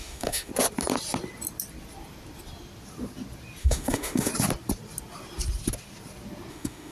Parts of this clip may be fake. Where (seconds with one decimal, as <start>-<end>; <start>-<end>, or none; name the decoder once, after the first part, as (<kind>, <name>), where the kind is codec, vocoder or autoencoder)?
0.0-0.5 (autoencoder, DAC-VAE); 3.6-4.3; 6.5-6.9